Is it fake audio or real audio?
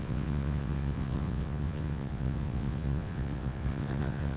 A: fake